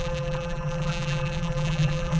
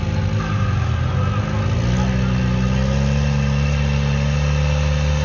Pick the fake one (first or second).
first